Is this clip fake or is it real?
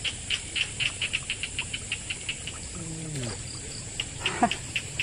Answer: fake